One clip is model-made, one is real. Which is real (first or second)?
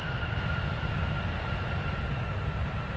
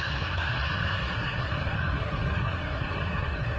first